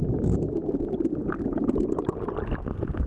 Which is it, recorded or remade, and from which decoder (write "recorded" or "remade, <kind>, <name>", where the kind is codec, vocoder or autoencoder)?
recorded